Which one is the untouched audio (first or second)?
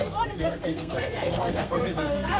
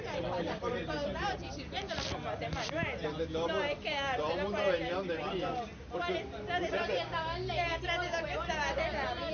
second